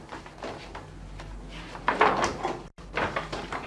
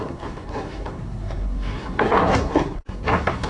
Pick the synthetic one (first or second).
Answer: second